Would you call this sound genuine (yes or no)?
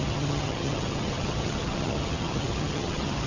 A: no